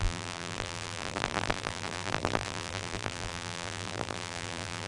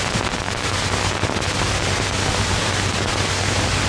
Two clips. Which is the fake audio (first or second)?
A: first